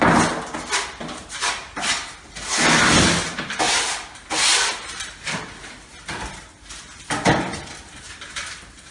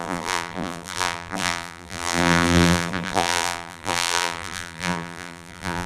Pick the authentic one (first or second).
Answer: first